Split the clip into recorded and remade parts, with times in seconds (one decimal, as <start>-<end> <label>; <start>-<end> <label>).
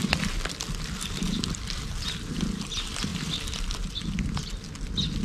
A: 0.0-1.9 remade; 1.9-5.2 recorded